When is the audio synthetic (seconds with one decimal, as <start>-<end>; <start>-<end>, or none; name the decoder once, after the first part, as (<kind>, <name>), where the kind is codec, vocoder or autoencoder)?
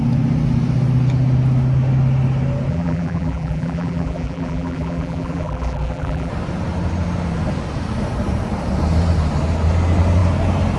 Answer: 2.7-6.3 (vocoder, BigVGAN v2)